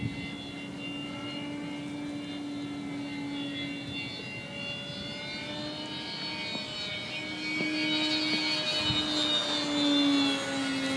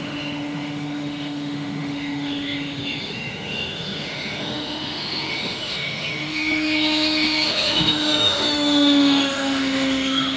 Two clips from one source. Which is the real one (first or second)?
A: first